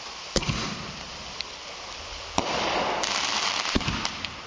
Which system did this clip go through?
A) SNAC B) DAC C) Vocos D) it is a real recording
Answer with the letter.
D